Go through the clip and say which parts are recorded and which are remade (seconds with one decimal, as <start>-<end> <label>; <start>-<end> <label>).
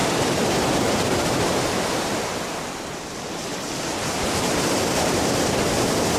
0.0-2.7 recorded; 2.7-6.2 remade